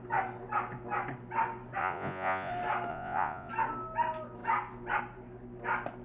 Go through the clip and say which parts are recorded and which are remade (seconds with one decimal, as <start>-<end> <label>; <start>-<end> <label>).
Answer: 0.0-1.8 recorded; 1.8-2.5 remade; 2.5-2.9 recorded; 2.9-3.5 remade; 3.5-6.0 recorded